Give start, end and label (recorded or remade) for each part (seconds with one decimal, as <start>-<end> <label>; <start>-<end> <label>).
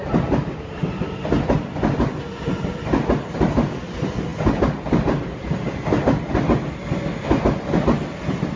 0.0-8.6 recorded